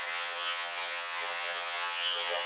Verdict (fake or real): fake